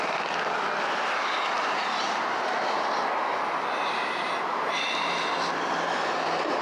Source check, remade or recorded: recorded